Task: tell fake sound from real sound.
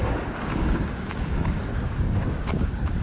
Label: fake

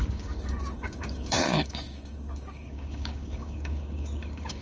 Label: fake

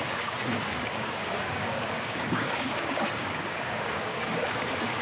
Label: fake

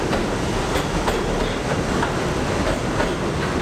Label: real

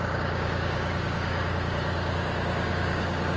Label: fake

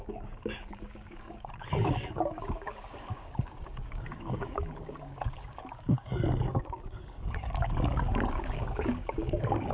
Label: fake